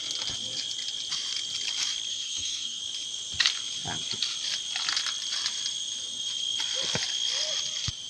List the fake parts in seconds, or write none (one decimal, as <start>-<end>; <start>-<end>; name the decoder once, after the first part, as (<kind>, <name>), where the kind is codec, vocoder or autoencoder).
2.1-2.8 (codec, SNAC)